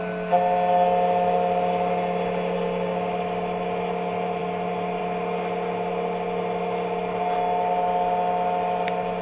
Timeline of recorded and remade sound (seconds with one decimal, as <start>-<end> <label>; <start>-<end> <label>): 0.0-9.2 recorded